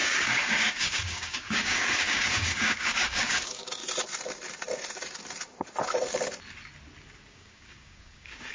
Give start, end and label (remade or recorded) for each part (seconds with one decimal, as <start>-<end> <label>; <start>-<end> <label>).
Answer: 0.0-3.8 remade; 3.8-7.3 recorded; 7.3-8.5 remade